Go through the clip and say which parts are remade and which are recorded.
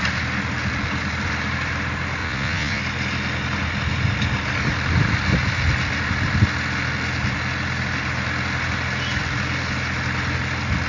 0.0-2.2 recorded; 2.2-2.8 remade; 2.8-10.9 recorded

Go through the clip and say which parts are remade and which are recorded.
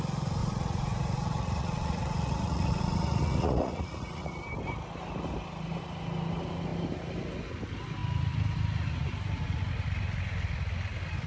0.0-0.4 recorded; 0.4-4.4 remade; 4.4-11.3 recorded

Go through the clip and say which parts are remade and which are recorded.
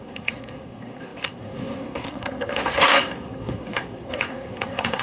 0.0-5.0 remade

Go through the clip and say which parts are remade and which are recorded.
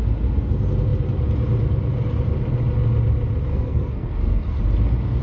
0.0-3.5 recorded; 3.5-4.6 remade; 4.6-5.2 recorded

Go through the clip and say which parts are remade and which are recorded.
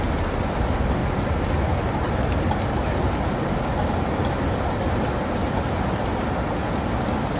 0.0-7.4 recorded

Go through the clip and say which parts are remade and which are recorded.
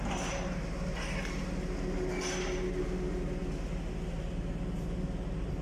0.0-5.6 recorded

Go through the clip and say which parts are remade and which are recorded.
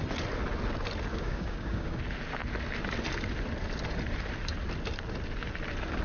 0.0-1.1 recorded; 1.1-2.0 remade; 2.0-6.0 recorded